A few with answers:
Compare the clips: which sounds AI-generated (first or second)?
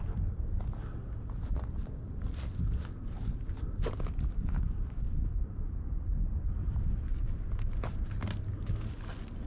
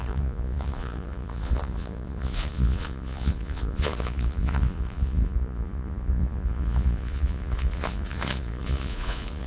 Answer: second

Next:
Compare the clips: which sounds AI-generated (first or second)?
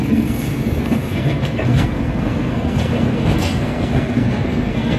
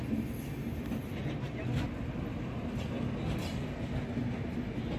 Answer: first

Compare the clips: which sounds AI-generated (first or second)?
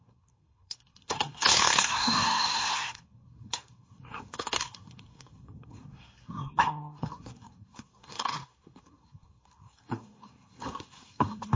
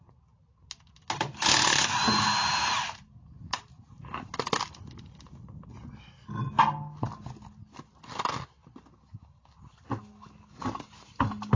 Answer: first